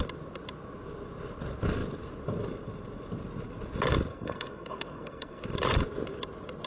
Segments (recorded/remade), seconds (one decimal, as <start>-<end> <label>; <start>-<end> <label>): 0.0-4.1 recorded; 4.1-5.4 remade; 5.4-6.7 recorded